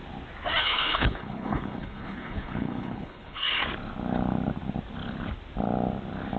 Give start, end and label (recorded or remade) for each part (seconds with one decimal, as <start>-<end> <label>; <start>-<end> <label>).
0.0-0.6 recorded; 0.6-3.6 remade; 3.6-6.4 recorded